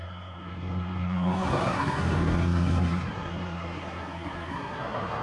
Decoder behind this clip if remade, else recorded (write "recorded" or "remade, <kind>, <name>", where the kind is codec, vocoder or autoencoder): remade, codec, SNAC